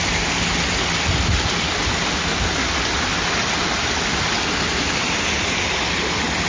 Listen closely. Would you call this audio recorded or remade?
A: recorded